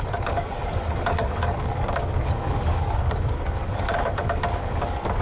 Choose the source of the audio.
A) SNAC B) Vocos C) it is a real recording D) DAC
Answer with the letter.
D